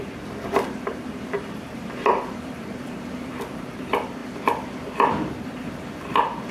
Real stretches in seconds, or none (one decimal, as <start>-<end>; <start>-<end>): 4.2-5.4